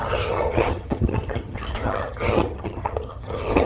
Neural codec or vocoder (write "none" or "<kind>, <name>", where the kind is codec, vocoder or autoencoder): vocoder, HiFi-GAN